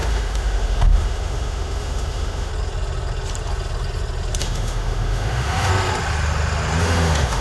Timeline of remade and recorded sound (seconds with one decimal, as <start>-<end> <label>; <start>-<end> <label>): 0.0-2.5 remade; 2.5-4.4 recorded; 4.4-5.7 remade; 5.7-6.8 recorded; 6.8-7.4 remade